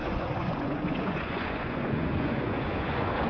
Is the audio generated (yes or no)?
yes